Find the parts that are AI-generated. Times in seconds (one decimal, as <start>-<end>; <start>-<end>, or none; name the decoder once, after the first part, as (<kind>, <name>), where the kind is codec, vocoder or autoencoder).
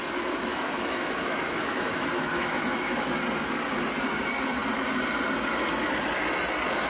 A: 0.5-3.1 (autoencoder, DAC-VAE)